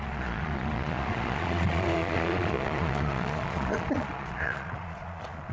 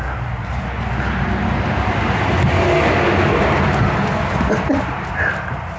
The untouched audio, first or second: second